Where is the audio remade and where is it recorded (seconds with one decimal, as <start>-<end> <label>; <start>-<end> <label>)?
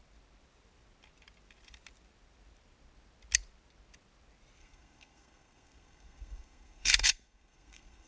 0.0-4.6 recorded; 4.6-8.1 remade